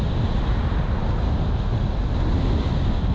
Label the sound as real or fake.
real